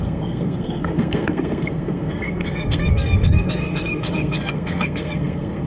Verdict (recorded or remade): remade